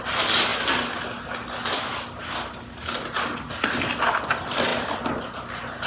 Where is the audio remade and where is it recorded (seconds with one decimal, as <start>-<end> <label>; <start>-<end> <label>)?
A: 0.0-5.9 recorded

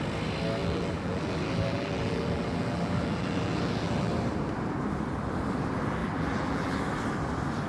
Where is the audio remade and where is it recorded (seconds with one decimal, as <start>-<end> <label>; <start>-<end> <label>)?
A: 0.0-0.6 recorded; 0.6-4.1 remade; 4.1-6.0 recorded; 6.0-6.8 remade; 6.8-7.7 recorded

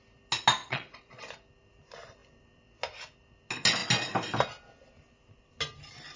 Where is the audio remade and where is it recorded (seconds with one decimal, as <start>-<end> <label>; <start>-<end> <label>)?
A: 0.0-0.6 recorded; 0.6-1.2 remade; 1.2-6.2 recorded

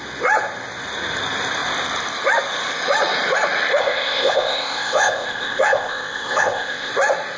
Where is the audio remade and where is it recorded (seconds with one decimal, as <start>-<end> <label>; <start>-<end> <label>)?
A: 0.0-3.8 recorded; 3.8-6.9 remade; 6.9-7.4 recorded

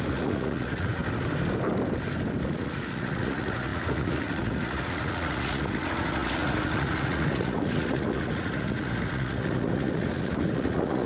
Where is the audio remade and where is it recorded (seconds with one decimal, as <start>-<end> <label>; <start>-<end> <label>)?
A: 0.0-1.0 remade; 1.0-2.4 recorded; 2.4-11.1 remade